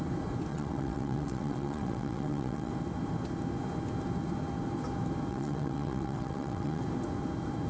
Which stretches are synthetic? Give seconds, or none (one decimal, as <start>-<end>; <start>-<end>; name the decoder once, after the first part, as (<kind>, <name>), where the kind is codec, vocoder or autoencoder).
0.5-2.7 (vocoder, WaveNeXt); 5.3-6.8